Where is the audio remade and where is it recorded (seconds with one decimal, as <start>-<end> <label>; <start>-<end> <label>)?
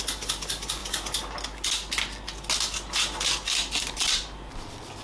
0.0-5.0 recorded